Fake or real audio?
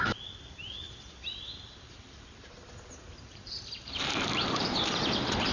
fake